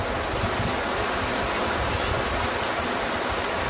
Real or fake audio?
real